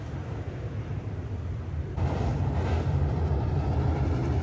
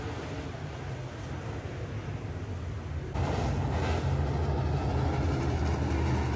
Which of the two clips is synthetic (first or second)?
first